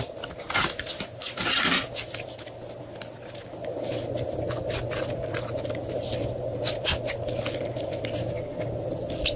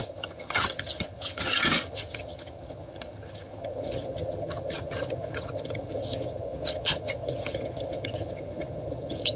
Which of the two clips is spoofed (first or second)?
second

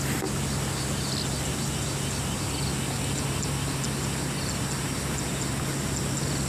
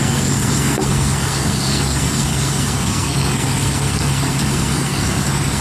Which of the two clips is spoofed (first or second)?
second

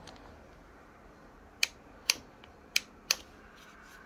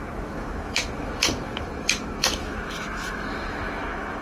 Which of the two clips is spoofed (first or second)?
second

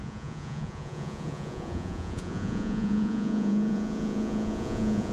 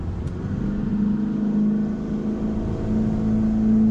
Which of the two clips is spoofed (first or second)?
first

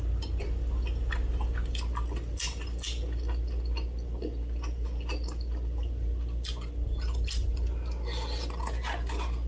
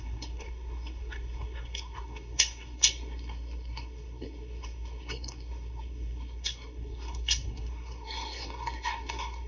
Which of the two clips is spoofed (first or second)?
second